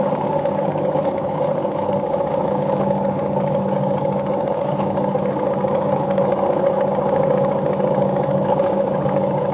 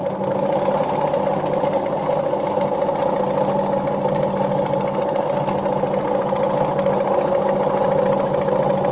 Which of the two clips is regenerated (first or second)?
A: first